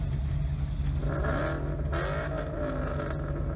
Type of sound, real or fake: real